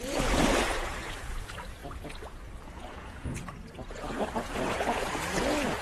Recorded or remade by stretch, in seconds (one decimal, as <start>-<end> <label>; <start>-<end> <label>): 0.0-5.8 remade